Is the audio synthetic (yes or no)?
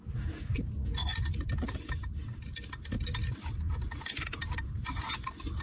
no